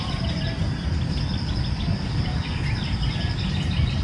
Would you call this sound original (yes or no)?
yes